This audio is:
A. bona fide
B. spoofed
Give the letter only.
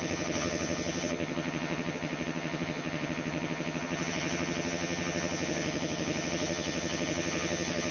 B